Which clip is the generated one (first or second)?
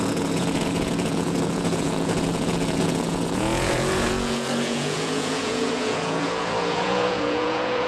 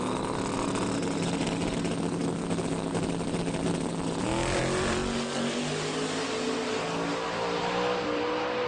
first